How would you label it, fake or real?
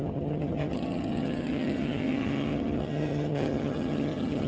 fake